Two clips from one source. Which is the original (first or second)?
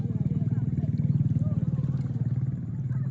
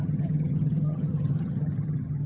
first